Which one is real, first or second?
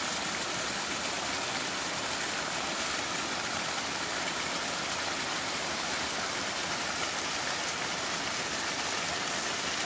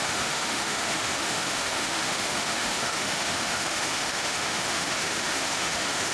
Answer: first